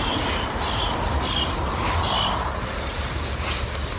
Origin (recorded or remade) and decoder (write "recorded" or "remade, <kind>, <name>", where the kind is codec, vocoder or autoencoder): recorded